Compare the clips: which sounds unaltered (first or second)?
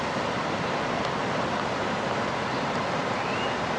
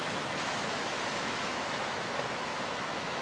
first